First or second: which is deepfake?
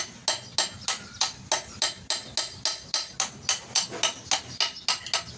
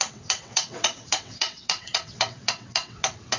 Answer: second